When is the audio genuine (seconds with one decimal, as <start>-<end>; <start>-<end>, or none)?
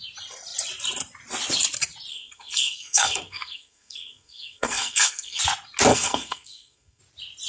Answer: 0.0-2.1; 5.4-5.9; 7.0-7.5